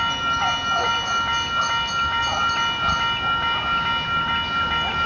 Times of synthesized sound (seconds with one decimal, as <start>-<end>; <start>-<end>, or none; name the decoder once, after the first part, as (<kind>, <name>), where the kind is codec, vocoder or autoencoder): none